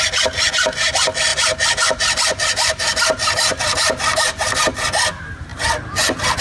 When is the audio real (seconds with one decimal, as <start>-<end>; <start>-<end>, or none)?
0.0-1.3; 4.6-6.4